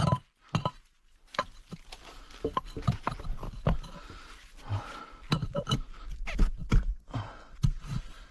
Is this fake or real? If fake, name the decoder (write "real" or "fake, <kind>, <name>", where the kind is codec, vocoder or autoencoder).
real